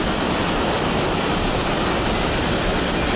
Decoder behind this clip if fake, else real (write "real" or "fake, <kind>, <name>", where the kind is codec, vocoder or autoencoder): real